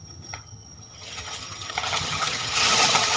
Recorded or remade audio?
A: remade